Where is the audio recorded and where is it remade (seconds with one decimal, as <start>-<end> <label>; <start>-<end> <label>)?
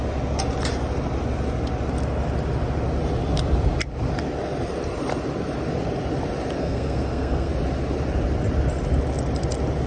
0.0-6.6 recorded; 6.6-7.5 remade; 7.5-9.9 recorded